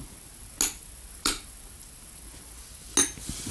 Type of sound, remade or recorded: recorded